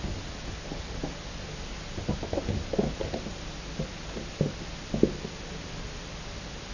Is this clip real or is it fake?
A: real